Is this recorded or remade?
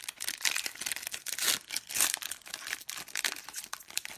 recorded